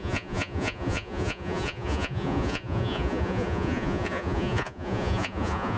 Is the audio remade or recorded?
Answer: remade